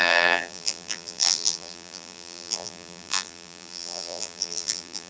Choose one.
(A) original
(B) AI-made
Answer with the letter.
B